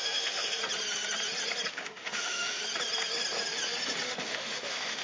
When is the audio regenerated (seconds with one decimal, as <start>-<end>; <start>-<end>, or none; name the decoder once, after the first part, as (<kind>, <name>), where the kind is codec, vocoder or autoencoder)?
0.0-0.6 (autoencoder, DAC-VAE); 1.7-2.6; 4.2-5.0